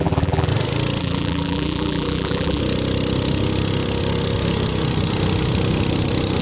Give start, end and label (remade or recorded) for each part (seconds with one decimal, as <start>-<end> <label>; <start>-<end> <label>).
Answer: 0.0-0.5 remade; 0.5-1.0 recorded; 1.0-2.6 remade; 2.6-6.4 recorded